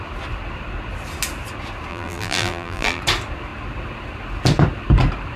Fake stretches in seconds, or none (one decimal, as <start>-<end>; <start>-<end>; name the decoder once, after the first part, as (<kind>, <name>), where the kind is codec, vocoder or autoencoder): 1.9-3.0 (vocoder, BigVGAN v2)